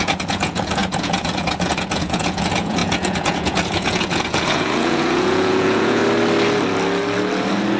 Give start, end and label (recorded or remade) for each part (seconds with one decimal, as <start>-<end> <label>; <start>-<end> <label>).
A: 0.0-6.0 remade; 6.0-7.8 recorded